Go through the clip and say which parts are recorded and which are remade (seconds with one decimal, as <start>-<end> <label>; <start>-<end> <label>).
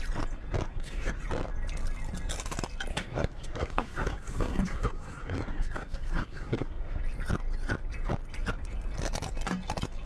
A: 0.0-0.6 recorded; 0.6-1.2 remade; 1.2-2.9 recorded; 2.9-7.0 remade; 7.0-10.1 recorded